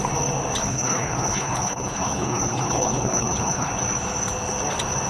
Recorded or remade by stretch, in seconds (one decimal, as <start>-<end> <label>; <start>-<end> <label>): 0.0-0.6 recorded; 0.6-3.7 remade; 3.7-5.1 recorded